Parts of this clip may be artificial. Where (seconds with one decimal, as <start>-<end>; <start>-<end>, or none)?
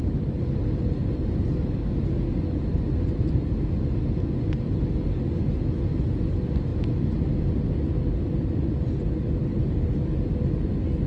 none